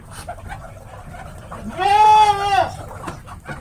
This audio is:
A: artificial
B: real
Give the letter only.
B